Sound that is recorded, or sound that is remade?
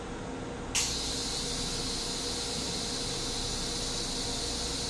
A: recorded